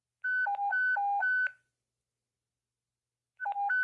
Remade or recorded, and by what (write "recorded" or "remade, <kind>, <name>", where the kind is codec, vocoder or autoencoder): recorded